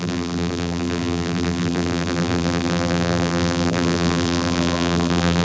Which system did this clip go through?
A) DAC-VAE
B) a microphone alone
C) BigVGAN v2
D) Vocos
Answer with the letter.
C